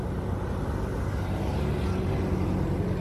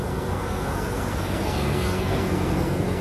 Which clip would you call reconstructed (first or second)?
second